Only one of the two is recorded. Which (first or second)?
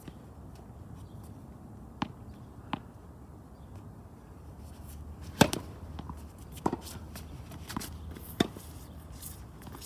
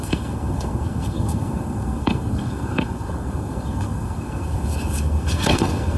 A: first